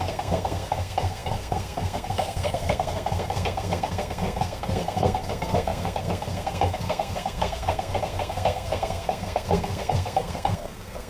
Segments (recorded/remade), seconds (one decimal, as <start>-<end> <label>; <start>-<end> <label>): 0.0-11.1 remade